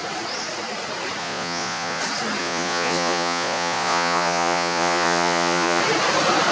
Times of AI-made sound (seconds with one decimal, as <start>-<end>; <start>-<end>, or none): 1.2-2.0; 2.4-5.8

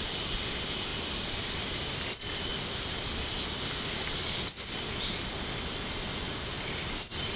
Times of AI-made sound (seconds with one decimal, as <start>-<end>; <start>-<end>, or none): 0.0-0.9; 1.8-2.5; 6.8-7.4

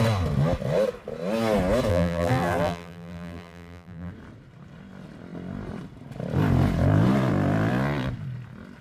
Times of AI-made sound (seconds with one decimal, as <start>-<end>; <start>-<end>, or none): 1.9-4.1

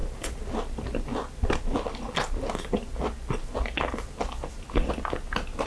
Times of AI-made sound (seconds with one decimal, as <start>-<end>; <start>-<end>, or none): none